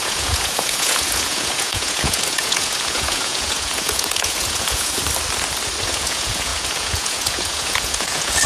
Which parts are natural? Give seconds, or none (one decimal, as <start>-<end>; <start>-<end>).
5.0-5.8